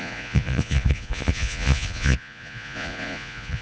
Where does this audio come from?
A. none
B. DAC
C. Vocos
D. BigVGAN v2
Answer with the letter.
C